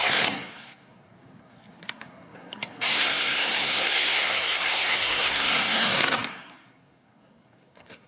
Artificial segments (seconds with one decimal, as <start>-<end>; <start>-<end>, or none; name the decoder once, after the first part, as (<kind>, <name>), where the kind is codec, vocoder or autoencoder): 0.0-8.1 (codec, SNAC)